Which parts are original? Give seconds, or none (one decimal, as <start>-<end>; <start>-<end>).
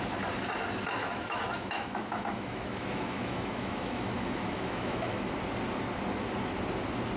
0.0-1.0; 5.3-7.2